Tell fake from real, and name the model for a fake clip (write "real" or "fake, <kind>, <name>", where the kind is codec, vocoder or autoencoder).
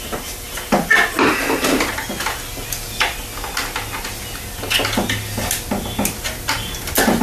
real